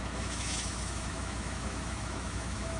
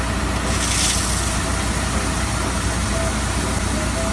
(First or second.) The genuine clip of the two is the second